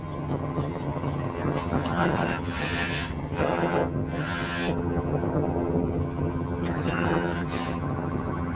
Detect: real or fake fake